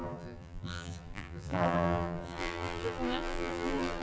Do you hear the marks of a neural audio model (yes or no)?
yes